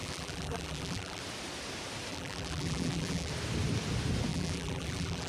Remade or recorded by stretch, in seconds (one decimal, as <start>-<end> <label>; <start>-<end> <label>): 0.0-1.2 remade; 1.2-2.1 recorded; 2.1-3.3 remade; 3.3-4.3 recorded; 4.3-5.3 remade